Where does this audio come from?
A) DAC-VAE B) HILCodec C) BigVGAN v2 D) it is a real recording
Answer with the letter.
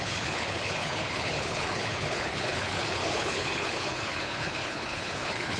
B